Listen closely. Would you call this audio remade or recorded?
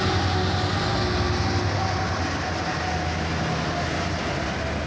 recorded